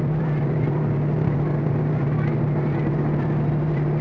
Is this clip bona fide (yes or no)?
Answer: no